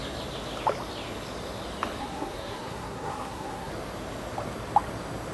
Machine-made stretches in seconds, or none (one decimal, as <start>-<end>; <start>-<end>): 2.0-3.7